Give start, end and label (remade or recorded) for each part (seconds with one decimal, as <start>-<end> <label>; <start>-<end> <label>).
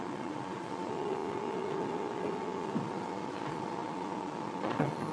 0.0-5.1 remade